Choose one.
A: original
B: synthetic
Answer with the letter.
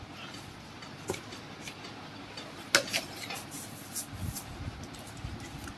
A